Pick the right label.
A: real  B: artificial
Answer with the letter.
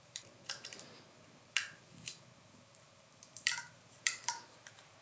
B